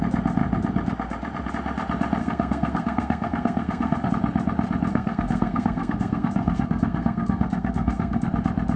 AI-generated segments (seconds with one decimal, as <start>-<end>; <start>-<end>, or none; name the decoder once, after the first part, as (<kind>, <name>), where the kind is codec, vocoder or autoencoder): 2.2-4.1 (codec, SNAC); 4.9-8.3